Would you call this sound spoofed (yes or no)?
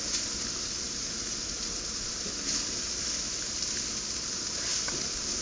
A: no